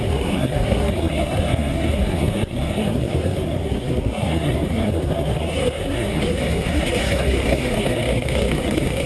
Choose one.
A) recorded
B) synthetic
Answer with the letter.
B